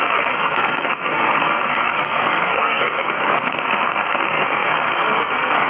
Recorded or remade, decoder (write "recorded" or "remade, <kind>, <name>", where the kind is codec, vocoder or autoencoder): remade, codec, SNAC